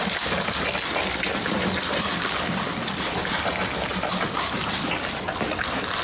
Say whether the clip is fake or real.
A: real